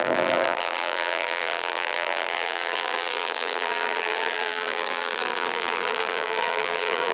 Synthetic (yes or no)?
yes